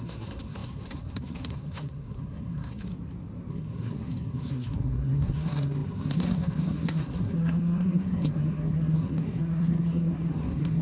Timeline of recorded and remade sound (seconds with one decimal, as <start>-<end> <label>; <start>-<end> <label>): 0.0-2.9 remade; 2.9-3.5 recorded; 3.5-10.8 remade